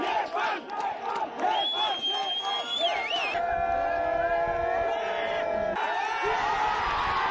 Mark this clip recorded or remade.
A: recorded